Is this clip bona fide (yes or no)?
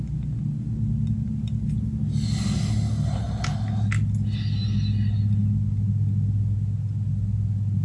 yes